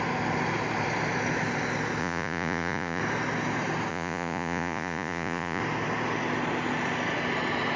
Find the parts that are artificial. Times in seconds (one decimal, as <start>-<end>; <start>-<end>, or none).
2.0-3.0; 3.9-5.6